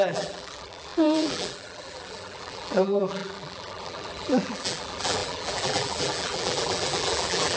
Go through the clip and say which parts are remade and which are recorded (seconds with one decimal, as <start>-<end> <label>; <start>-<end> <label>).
0.0-7.6 remade